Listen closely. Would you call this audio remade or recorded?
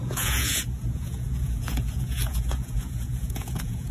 remade